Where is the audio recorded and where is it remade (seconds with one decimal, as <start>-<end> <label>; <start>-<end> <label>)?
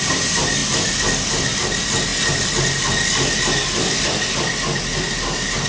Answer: 0.0-5.7 recorded